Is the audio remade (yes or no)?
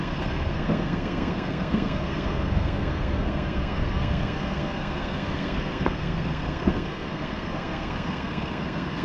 yes